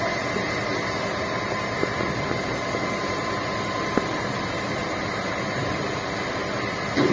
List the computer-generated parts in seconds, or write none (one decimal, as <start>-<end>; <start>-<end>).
none